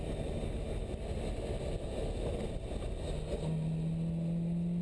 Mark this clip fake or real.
real